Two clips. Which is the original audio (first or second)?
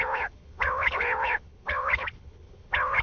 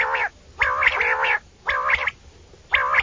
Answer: second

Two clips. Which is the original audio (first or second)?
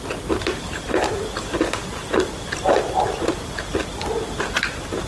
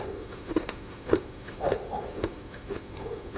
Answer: first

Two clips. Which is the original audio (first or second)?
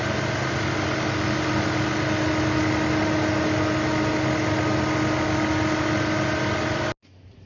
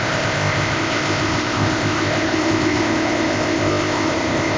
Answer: first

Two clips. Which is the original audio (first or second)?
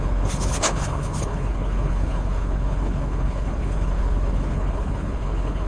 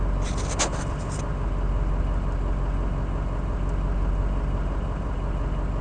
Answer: second